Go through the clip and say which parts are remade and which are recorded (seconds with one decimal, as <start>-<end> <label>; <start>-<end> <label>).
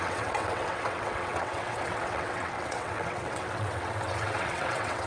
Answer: 0.0-5.1 remade